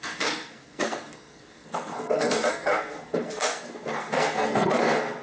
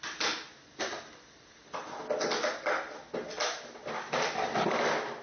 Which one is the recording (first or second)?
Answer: second